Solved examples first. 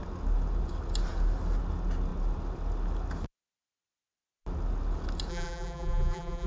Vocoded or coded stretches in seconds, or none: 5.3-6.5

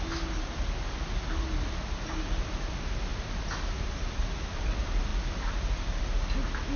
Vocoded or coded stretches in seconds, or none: none

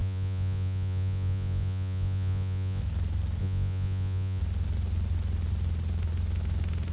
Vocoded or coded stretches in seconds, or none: 0.0-2.8; 3.4-4.4

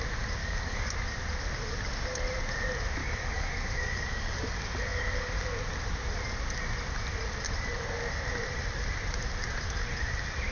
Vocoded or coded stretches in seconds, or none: 0.4-0.9; 3.0-4.4

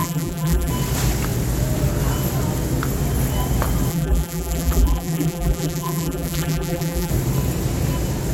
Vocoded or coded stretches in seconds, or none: 0.0-0.7; 3.9-7.1